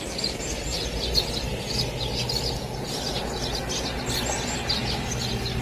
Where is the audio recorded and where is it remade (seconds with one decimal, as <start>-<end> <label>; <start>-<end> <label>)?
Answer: 0.0-5.6 recorded